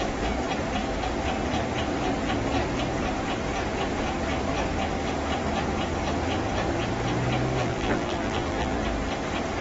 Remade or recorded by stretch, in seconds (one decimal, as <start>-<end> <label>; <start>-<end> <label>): 0.0-7.6 recorded; 7.6-8.8 remade; 8.8-9.6 recorded